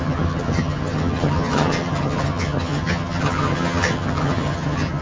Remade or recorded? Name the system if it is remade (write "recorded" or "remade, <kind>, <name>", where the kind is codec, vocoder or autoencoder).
remade, vocoder, HiFi-GAN